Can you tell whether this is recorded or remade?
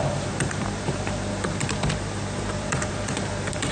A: remade